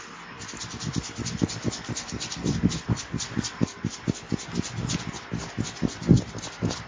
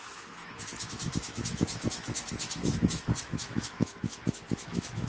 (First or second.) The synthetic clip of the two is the second